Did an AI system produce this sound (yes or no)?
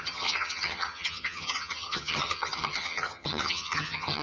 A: yes